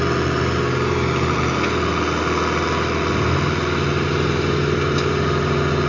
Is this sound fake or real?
real